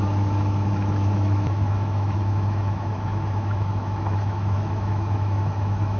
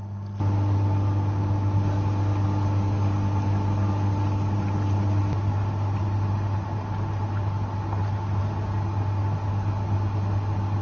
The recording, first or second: second